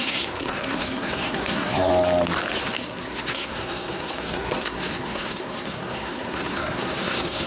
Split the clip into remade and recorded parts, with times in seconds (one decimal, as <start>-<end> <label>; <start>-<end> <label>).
0.0-1.9 remade; 1.9-2.6 recorded; 2.6-7.5 remade